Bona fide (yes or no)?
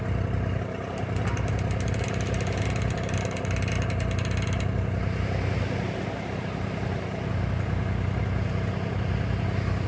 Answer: yes